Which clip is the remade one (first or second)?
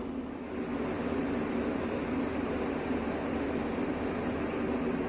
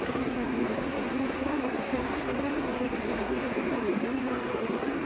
second